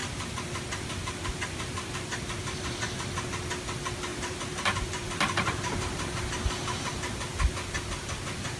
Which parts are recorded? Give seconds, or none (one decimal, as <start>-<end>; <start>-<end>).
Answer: 3.3-4.1; 6.2-8.6